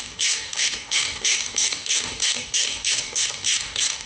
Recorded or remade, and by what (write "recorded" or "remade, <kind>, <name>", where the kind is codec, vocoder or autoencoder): remade, codec, DAC